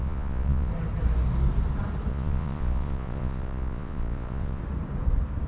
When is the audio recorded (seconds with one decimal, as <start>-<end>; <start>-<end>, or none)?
0.7-2.1; 4.6-5.5